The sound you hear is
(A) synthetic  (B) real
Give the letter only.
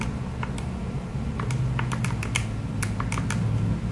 B